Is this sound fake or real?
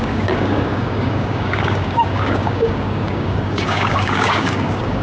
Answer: fake